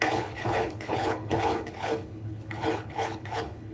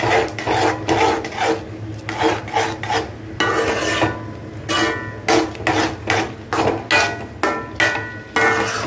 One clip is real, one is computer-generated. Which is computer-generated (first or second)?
first